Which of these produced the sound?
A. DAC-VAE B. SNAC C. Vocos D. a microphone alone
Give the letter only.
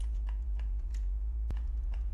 C